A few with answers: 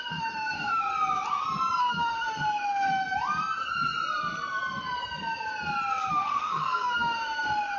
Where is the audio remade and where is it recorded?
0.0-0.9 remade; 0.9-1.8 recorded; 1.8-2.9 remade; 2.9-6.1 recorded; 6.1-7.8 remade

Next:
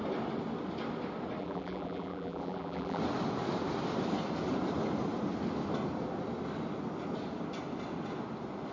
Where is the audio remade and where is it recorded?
0.0-1.4 recorded; 1.4-3.0 remade; 3.0-8.7 recorded

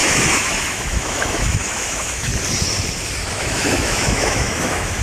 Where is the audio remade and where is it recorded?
0.0-2.3 remade; 2.3-3.3 recorded; 3.3-5.0 remade

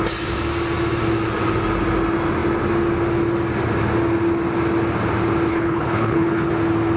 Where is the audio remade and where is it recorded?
0.0-5.5 recorded; 5.5-6.5 remade; 6.5-7.0 recorded

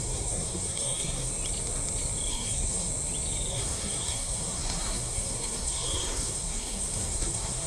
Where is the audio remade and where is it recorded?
0.0-1.3 remade; 1.3-2.3 recorded; 2.3-2.9 remade; 2.9-3.5 recorded; 3.5-7.7 remade